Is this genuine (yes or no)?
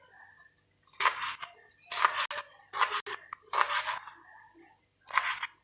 yes